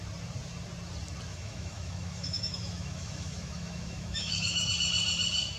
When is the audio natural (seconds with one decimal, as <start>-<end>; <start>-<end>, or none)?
0.0-1.3; 4.7-5.6